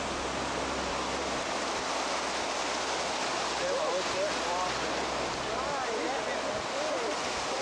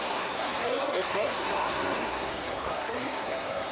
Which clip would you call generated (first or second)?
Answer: second